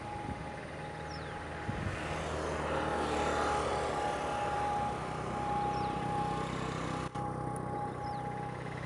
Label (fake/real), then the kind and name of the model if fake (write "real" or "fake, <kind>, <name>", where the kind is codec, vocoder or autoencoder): real